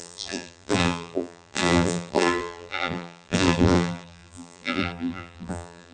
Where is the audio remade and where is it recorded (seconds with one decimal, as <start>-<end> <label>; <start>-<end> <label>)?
0.0-5.9 remade